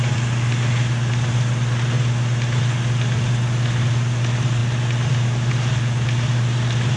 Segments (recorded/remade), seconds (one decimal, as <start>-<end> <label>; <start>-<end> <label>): 0.0-7.0 recorded